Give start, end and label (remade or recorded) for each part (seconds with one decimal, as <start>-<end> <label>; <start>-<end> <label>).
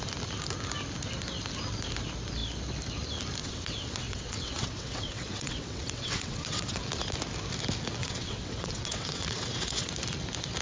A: 0.0-3.4 recorded; 3.4-6.8 remade; 6.8-8.0 recorded; 8.0-9.9 remade; 9.9-10.6 recorded